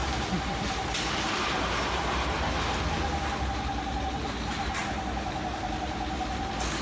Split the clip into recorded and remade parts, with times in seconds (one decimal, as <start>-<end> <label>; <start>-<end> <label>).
0.0-6.8 recorded